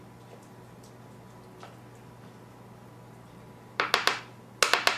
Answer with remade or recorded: recorded